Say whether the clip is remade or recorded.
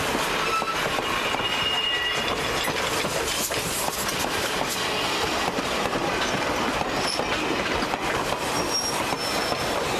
recorded